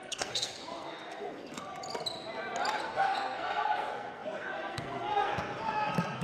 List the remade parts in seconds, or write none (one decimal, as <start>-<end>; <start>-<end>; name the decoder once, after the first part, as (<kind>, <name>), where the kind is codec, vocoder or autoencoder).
0.0-1.7 (codec, SNAC); 2.8-6.2